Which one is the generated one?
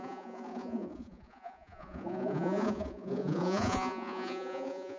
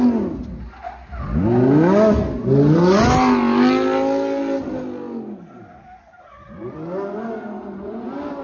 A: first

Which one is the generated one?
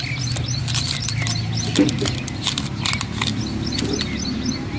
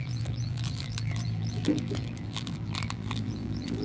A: second